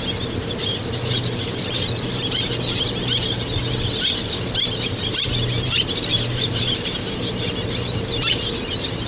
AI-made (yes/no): yes